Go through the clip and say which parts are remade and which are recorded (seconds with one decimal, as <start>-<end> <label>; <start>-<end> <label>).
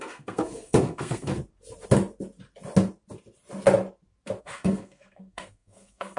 0.0-1.3 remade; 1.3-4.4 recorded; 4.4-6.2 remade